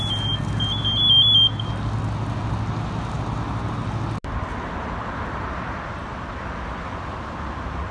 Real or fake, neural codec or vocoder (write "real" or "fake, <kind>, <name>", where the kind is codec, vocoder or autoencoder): real